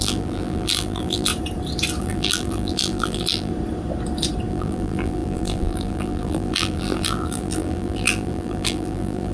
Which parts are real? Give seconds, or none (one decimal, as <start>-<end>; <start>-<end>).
1.3-2.0; 3.5-4.5